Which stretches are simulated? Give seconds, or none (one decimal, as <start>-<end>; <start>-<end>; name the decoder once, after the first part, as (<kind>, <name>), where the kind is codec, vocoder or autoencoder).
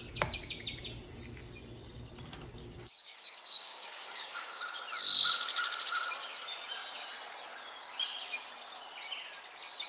2.6-4.6 (codec, DAC)